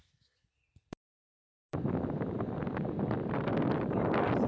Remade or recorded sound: remade